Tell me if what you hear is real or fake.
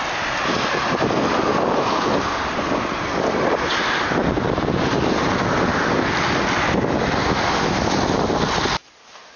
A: real